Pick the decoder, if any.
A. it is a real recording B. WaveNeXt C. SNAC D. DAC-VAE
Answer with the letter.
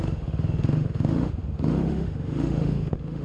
D